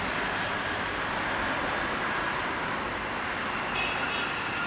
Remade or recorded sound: recorded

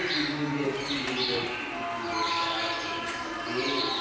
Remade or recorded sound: recorded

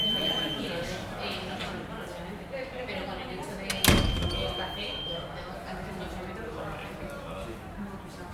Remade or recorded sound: recorded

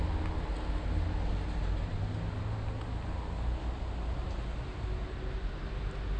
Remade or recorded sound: recorded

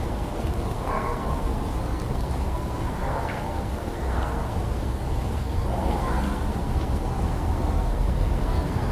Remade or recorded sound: remade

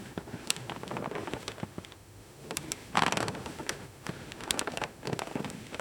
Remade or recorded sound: remade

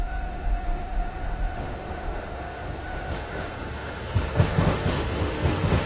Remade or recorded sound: remade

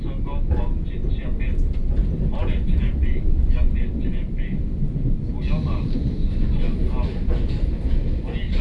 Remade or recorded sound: recorded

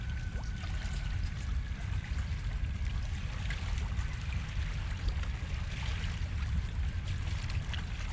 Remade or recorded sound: recorded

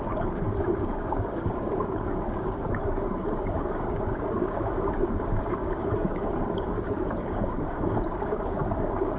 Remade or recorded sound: remade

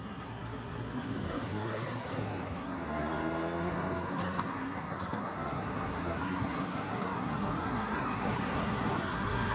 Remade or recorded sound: remade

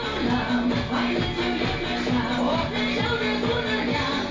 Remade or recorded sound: recorded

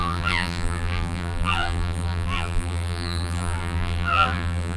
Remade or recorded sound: remade